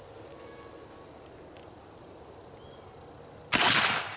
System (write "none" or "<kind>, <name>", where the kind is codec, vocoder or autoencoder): none